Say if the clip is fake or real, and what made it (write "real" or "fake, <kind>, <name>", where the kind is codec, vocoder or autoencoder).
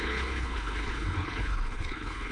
fake, codec, HILCodec